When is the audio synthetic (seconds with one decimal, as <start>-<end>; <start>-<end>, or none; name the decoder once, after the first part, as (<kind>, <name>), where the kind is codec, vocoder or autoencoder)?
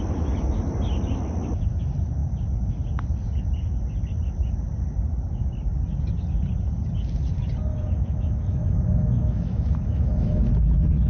7.7-10.5 (autoencoder, DAC-VAE)